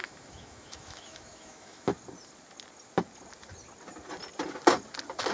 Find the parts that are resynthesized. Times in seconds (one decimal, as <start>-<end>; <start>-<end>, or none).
0.0-1.9